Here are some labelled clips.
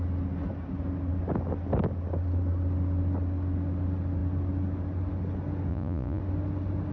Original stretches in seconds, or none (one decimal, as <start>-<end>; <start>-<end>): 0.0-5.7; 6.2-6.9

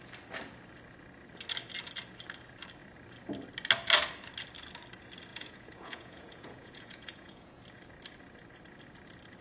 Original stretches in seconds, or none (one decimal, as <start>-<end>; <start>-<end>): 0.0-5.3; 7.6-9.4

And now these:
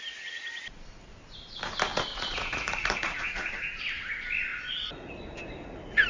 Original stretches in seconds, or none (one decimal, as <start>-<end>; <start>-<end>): 0.0-2.1; 3.5-4.5; 5.1-6.1

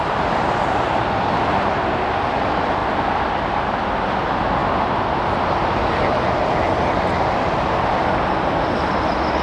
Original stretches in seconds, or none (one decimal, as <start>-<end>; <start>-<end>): 0.0-9.4

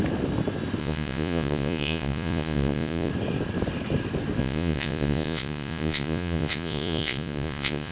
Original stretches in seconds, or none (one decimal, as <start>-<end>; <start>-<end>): 0.0-0.8; 3.1-4.4

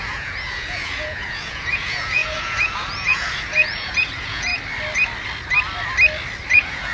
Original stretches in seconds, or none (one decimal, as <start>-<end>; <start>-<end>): 4.5-6.5